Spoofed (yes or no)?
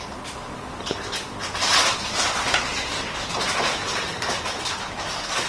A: no